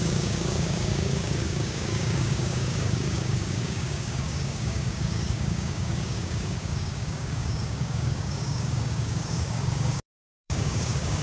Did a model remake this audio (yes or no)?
yes